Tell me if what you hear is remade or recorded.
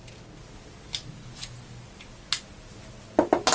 recorded